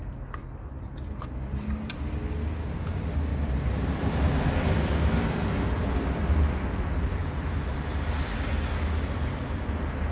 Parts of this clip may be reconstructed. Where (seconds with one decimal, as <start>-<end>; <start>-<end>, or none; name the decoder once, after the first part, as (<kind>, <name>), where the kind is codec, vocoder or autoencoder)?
3.3-4.2 (vocoder, BigVGAN v2); 7.2-8.2